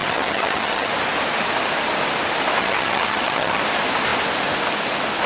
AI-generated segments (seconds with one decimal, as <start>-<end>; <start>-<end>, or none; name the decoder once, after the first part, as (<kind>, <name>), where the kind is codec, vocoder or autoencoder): 0.0-0.9 (vocoder, HiFi-GAN); 2.6-3.6